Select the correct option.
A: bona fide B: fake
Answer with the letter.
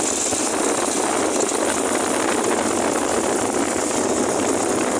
A